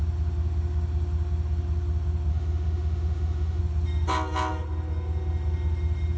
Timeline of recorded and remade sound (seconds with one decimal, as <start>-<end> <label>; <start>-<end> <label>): 0.0-2.3 recorded; 2.3-3.6 remade; 3.6-6.2 recorded